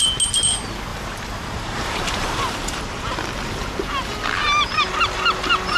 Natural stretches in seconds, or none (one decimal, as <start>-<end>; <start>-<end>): 0.0-0.9; 2.8-4.4; 4.9-5.8